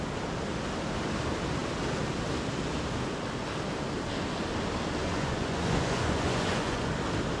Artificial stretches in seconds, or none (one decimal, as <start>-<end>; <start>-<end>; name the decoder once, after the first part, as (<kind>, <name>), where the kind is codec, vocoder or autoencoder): 5.0-6.9 (vocoder, Vocos)